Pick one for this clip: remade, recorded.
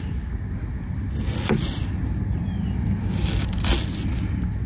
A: recorded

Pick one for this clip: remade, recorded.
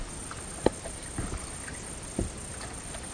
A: recorded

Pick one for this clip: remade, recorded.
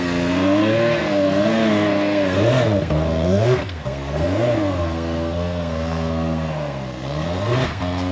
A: remade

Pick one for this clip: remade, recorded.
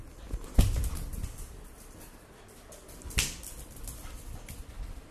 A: recorded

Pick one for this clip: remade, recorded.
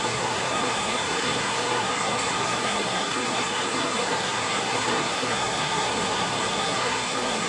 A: remade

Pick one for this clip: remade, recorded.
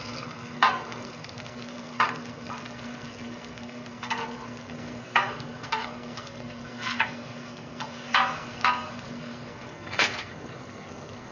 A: remade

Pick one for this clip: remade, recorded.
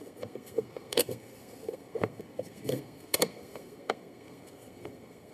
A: remade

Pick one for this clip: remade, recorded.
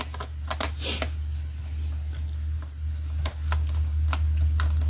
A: recorded